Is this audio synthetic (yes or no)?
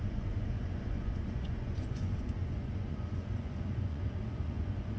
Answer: yes